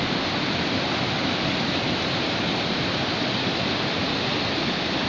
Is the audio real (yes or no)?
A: yes